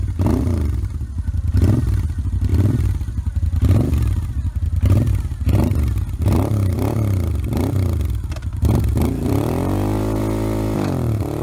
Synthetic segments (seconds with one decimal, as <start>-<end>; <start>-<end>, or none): 2.5-5.1; 8.5-10.2